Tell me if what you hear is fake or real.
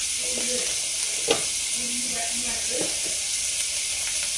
real